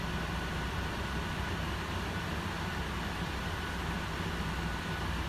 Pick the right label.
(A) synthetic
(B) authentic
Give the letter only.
B